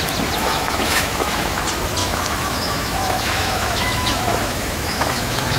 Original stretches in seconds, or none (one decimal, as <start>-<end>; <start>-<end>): 0.0-0.4; 1.6-2.0